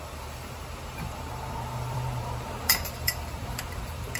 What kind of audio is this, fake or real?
fake